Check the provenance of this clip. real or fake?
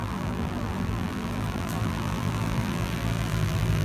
fake